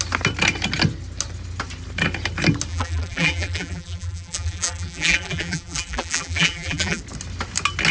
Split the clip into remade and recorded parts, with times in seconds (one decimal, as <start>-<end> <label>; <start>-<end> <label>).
0.0-2.7 recorded; 2.7-7.0 remade; 7.0-7.9 recorded

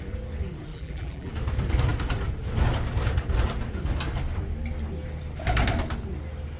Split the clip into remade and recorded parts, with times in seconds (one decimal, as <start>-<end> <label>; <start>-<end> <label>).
0.0-0.7 recorded; 0.7-1.3 remade; 1.3-6.6 recorded

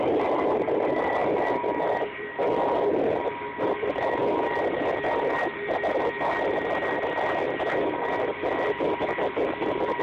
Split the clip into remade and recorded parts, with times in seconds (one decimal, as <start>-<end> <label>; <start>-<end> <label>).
0.0-1.2 remade; 1.2-2.1 recorded; 2.1-4.2 remade; 4.2-8.7 recorded; 8.7-10.0 remade

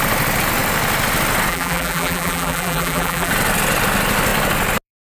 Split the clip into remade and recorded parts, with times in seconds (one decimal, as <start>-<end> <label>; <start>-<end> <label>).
0.0-1.5 recorded; 1.5-3.3 remade; 3.3-5.1 recorded

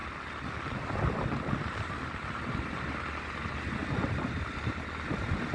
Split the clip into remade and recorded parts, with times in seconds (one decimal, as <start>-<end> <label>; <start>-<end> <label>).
0.0-1.9 remade; 1.9-3.8 recorded; 3.8-4.5 remade; 4.5-5.5 recorded

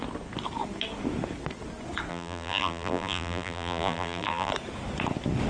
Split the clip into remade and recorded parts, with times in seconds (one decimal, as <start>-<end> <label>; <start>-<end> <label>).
0.0-2.1 recorded; 2.1-4.5 remade; 4.5-5.5 recorded

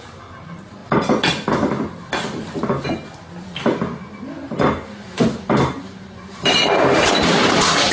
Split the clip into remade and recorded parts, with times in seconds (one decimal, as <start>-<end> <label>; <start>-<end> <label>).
0.0-0.8 remade; 0.8-5.5 recorded; 5.5-7.9 remade

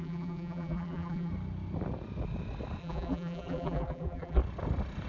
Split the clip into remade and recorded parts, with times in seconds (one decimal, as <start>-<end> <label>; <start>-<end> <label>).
0.0-1.3 remade; 1.3-2.8 recorded; 2.8-4.4 remade; 4.4-5.1 recorded